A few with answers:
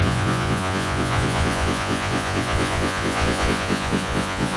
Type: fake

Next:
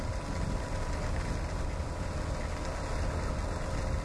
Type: real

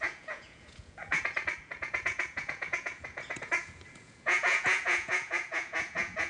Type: fake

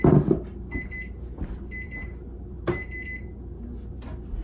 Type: real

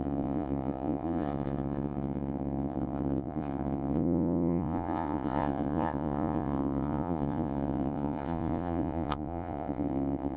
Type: fake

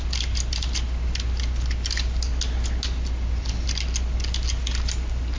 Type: real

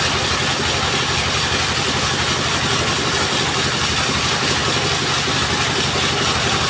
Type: real